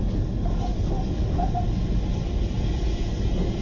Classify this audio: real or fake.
real